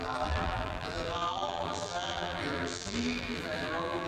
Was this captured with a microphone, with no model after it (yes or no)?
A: no